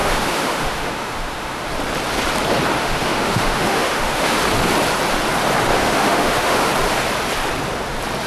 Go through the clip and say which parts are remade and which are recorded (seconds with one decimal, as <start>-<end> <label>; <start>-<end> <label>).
0.0-1.7 remade; 1.7-2.8 recorded; 2.8-4.4 remade; 4.4-5.8 recorded; 5.8-6.7 remade; 6.7-8.3 recorded